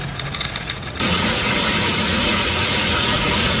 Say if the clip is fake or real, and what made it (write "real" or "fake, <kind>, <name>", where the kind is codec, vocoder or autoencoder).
fake, vocoder, Vocos